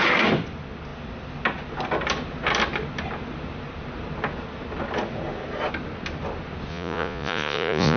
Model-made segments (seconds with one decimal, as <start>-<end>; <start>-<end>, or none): 6.7-8.0